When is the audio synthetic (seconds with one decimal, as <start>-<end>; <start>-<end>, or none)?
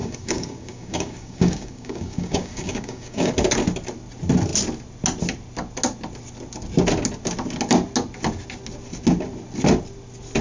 0.0-3.3